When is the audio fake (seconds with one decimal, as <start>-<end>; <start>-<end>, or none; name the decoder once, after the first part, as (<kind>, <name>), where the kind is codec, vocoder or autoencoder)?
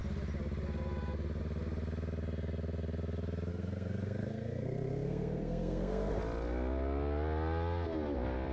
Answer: 3.5-6.2 (codec, SNAC)